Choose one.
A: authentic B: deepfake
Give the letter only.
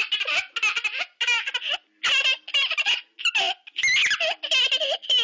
A